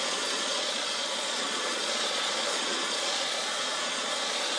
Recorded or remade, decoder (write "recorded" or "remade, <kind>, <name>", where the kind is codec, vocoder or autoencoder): remade, vocoder, Vocos